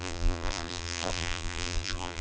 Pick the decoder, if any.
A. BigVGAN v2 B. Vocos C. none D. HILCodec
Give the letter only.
A